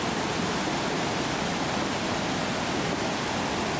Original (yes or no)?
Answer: yes